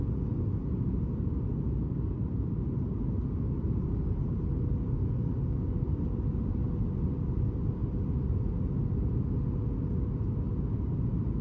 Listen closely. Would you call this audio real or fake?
real